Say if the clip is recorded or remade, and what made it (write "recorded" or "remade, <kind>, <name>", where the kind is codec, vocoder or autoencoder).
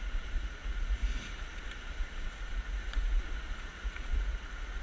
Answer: remade, vocoder, Vocos